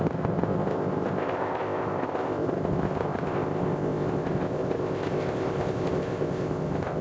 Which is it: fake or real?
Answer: fake